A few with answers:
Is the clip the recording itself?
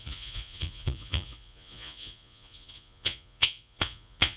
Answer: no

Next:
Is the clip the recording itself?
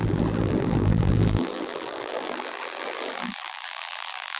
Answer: no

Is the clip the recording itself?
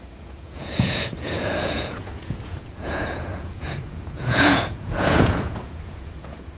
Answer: no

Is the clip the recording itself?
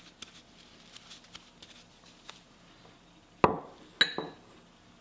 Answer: yes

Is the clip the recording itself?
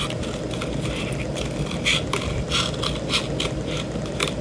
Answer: yes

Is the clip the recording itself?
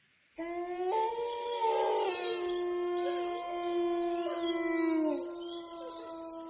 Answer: yes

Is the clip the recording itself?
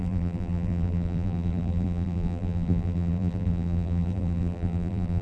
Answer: no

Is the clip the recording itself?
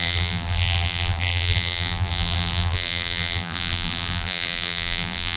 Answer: no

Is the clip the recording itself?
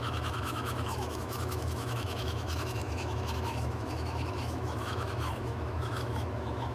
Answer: no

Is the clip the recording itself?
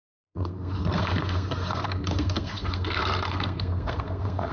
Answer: no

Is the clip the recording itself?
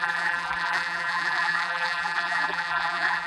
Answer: no